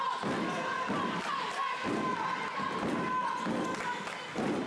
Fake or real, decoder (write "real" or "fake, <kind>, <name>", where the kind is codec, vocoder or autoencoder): real